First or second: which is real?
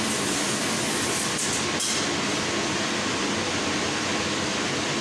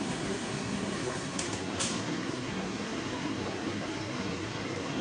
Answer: first